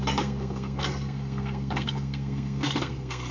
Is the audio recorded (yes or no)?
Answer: no